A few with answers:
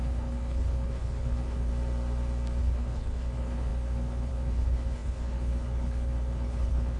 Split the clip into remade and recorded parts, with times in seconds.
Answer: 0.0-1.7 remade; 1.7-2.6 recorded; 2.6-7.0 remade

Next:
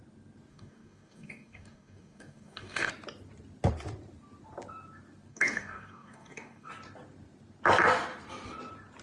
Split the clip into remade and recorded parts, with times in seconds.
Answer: 0.0-0.5 recorded; 0.5-2.9 remade; 2.9-5.3 recorded; 5.3-6.7 remade; 6.7-9.0 recorded

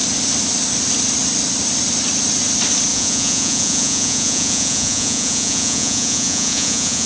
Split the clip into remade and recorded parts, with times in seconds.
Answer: 0.0-2.9 recorded; 2.9-7.1 remade